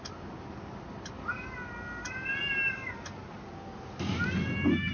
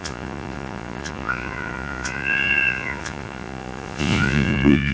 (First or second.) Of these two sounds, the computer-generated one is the second